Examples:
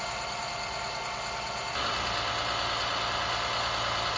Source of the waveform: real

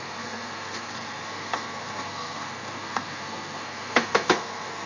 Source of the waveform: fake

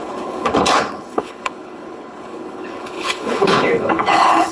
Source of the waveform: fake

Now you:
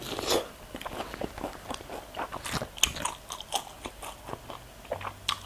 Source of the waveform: real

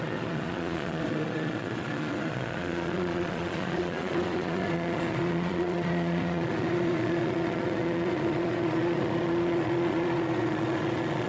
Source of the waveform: fake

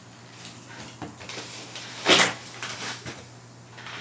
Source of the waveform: real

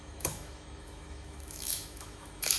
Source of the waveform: fake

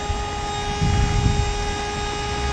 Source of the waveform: real